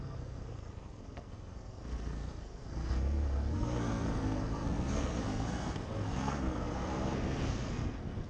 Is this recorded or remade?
remade